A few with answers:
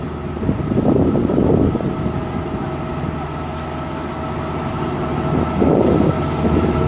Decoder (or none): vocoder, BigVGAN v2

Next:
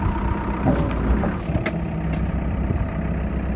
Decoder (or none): none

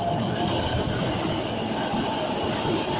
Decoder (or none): none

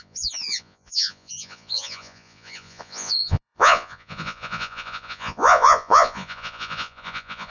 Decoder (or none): vocoder, Vocos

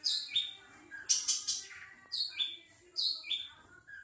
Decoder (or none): none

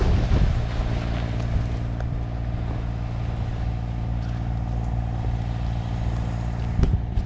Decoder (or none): none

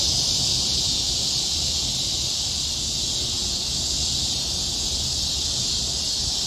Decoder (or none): none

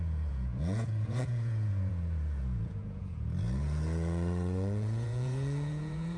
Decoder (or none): vocoder, Vocos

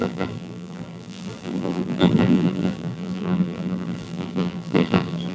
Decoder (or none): vocoder, BigVGAN v2